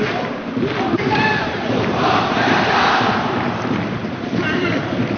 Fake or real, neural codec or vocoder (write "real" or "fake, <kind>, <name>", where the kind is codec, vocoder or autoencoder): fake, vocoder, BigVGAN v2